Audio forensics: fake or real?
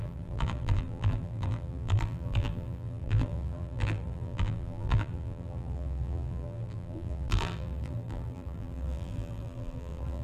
fake